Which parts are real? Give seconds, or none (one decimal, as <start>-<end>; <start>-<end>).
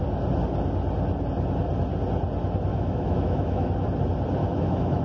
0.0-2.7; 3.7-4.4